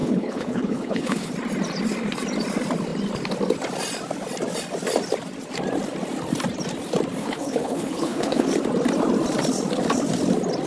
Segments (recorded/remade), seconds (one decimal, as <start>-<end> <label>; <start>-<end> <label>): 0.0-1.3 remade; 1.3-7.2 recorded; 7.2-8.5 remade; 8.5-10.7 recorded